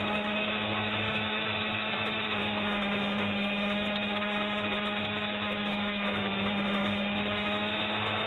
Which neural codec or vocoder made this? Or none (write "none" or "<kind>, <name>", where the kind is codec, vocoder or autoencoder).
autoencoder, DAC-VAE